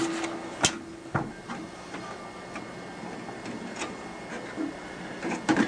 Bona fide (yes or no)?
yes